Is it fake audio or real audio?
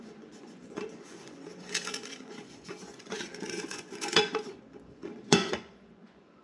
fake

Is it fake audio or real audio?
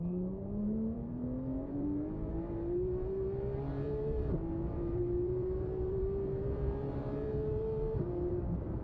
fake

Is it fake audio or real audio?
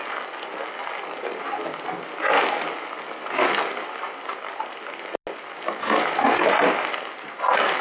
real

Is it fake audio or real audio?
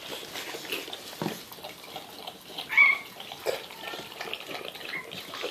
real